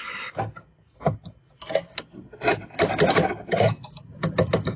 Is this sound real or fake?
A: real